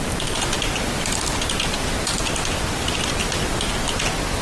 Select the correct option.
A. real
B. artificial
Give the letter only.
A